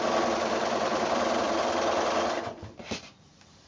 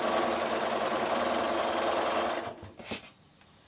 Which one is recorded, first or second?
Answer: second